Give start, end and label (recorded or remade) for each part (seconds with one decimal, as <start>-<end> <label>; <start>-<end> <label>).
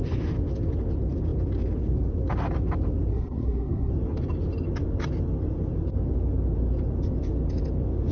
0.0-3.1 recorded; 3.1-3.9 remade; 3.9-8.1 recorded